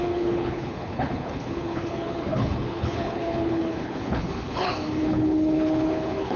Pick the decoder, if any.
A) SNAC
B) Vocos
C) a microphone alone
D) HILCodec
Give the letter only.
D